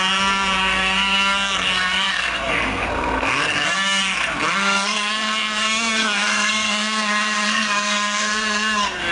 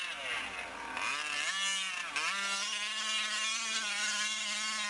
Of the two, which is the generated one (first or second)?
first